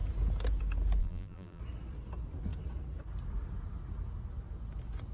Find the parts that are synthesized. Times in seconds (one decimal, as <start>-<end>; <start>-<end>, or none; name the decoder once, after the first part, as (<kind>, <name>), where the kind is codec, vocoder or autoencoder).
1.0-1.6 (vocoder, BigVGAN v2)